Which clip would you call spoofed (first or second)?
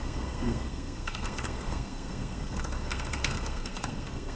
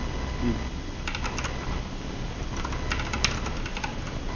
first